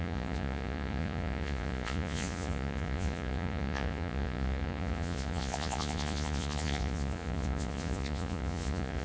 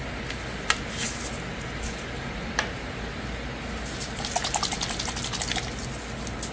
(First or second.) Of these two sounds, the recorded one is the second